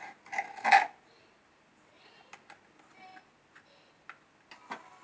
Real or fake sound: real